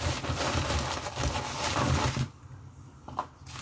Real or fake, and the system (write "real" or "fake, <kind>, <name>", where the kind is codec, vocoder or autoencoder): real